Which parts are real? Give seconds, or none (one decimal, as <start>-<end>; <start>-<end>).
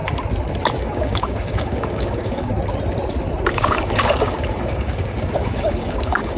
0.0-0.8; 2.5-3.5